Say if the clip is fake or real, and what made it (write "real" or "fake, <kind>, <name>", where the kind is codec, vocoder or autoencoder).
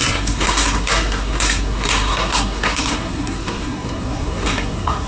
fake, codec, SNAC